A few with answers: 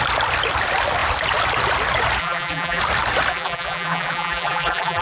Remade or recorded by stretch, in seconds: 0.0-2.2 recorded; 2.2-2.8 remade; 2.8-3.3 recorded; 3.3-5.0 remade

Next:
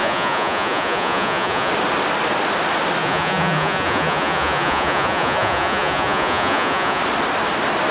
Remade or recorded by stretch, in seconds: 0.0-1.7 remade; 1.7-3.0 recorded; 3.0-7.0 remade; 7.0-7.9 recorded

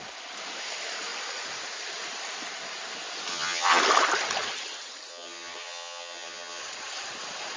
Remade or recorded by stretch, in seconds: 0.0-3.3 recorded; 3.3-3.8 remade; 3.8-5.1 recorded; 5.1-6.6 remade; 6.6-7.6 recorded